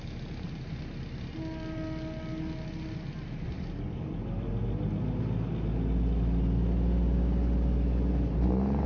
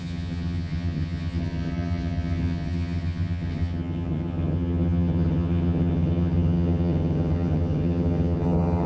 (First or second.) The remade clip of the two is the second